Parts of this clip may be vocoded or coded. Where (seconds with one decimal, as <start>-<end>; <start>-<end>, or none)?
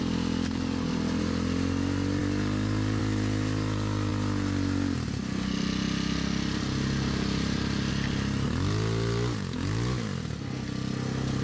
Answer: none